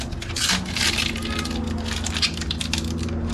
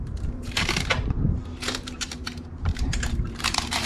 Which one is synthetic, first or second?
second